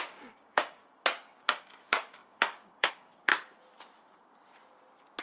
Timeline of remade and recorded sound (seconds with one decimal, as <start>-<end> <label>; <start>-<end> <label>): 0.0-0.8 remade; 0.8-1.4 recorded; 1.4-3.3 remade; 3.3-5.2 recorded